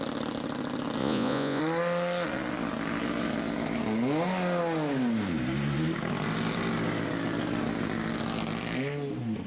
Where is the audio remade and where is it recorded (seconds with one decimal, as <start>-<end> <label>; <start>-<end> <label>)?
0.0-1.0 recorded; 1.0-1.6 remade; 1.6-9.5 recorded